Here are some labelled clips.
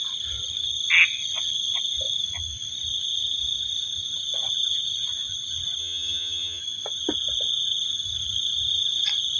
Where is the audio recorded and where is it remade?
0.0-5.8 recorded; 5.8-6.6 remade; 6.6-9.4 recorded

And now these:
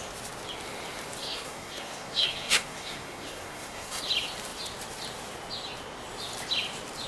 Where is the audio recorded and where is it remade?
0.0-1.2 recorded; 1.2-4.0 remade; 4.0-7.1 recorded

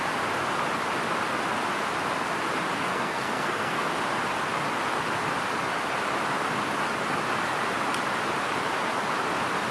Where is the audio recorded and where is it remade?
0.0-2.9 recorded; 2.9-3.9 remade; 3.9-9.7 recorded

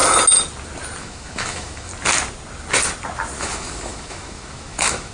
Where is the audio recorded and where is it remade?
0.0-1.0 recorded; 1.0-1.9 remade; 1.9-3.4 recorded; 3.4-5.1 remade